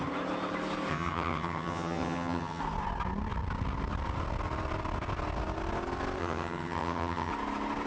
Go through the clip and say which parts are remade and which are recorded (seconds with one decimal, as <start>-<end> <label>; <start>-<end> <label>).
0.0-0.9 recorded; 0.9-2.6 remade; 2.6-6.2 recorded; 6.2-7.3 remade; 7.3-7.9 recorded